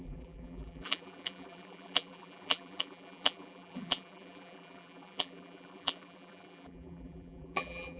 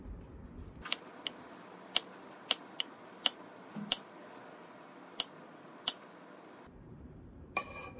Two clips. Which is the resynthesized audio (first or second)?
first